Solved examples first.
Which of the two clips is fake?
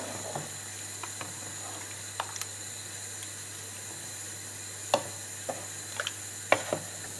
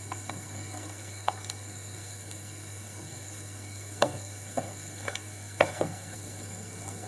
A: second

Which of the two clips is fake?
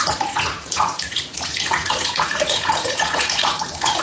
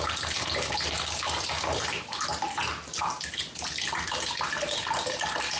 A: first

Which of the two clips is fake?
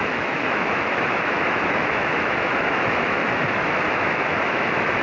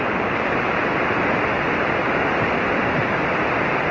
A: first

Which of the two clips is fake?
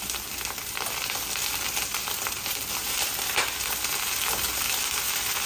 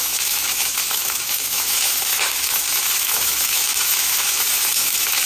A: second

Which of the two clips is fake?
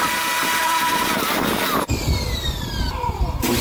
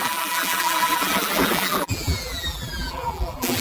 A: second